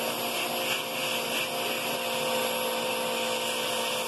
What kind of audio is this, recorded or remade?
recorded